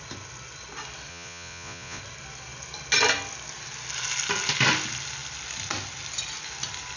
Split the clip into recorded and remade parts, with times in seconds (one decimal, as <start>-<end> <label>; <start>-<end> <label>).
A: 0.0-1.1 recorded; 1.1-2.0 remade; 2.0-7.0 recorded